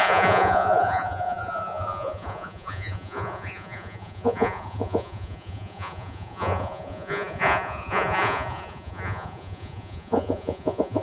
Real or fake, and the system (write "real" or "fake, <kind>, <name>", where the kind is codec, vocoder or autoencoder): fake, vocoder, Vocos